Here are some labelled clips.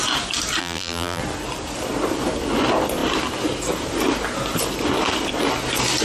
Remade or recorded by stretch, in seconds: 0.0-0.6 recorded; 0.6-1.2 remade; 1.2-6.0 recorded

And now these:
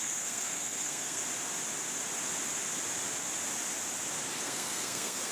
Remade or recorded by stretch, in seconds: 0.0-1.2 remade; 1.2-4.4 recorded; 4.4-5.3 remade

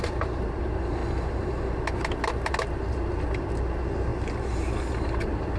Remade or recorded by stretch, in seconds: 0.0-1.0 remade; 1.0-2.6 recorded; 2.6-4.1 remade; 4.1-4.9 recorded; 4.9-5.6 remade

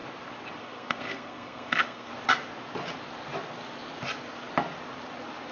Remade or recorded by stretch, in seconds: 0.0-0.6 recorded; 0.6-2.1 remade; 2.1-5.5 recorded